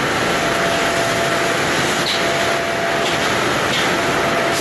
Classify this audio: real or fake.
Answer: real